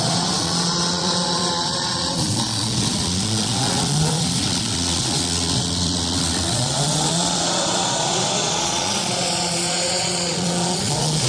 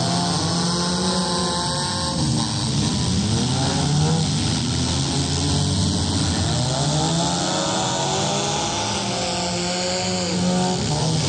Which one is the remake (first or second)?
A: first